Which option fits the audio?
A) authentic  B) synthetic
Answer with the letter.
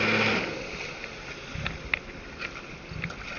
A